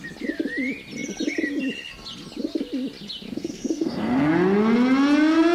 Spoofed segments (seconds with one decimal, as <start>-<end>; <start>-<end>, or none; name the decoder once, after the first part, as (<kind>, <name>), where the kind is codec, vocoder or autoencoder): 3.3-4.3 (codec, SNAC)

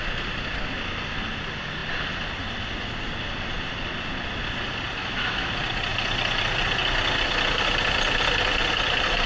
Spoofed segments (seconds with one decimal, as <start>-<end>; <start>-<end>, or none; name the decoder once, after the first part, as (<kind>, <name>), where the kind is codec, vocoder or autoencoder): 5.0-5.5 (autoencoder, DAC-VAE)

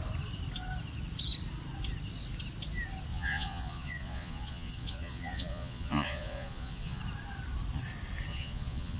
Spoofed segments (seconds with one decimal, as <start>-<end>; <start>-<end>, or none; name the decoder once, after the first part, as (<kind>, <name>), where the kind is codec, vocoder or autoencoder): 3.1-7.0 (vocoder, Vocos); 8.3-9.0

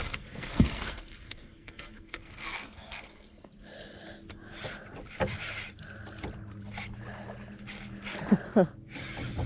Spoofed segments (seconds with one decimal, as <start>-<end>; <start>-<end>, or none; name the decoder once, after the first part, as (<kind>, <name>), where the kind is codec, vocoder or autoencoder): 0.0-3.5 (codec, SNAC)

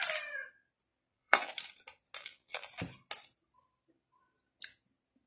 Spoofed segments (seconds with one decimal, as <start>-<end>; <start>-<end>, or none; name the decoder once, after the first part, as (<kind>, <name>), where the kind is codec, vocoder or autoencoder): 0.9-1.5 (vocoder, BigVGAN v2); 2.2-2.8